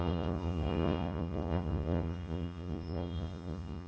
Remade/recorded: remade